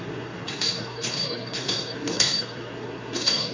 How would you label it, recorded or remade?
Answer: remade